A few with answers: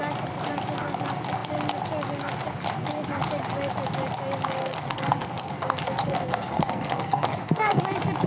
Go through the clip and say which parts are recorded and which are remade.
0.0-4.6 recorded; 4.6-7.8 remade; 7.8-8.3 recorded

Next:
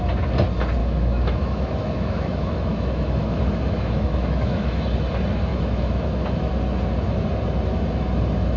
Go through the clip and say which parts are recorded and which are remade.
0.0-0.8 recorded; 0.8-4.8 remade; 4.8-5.5 recorded; 5.5-6.5 remade; 6.5-8.6 recorded

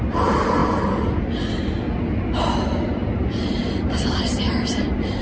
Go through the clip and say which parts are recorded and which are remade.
0.0-3.6 recorded; 3.6-5.2 remade

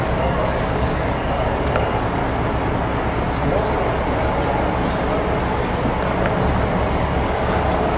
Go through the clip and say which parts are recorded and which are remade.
0.0-2.2 remade; 2.2-6.9 recorded; 6.9-8.0 remade

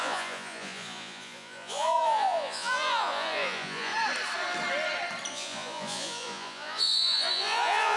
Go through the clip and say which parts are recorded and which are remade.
0.0-3.9 remade; 3.9-5.3 recorded; 5.3-8.0 remade

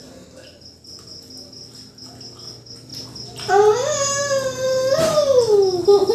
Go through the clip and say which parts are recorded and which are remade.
0.0-6.1 recorded